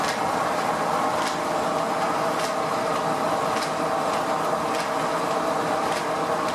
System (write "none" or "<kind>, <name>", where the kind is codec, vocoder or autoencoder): none